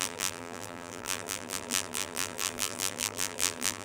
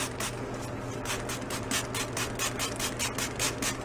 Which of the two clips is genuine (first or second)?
second